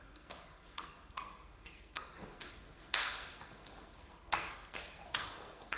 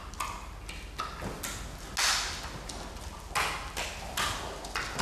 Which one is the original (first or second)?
second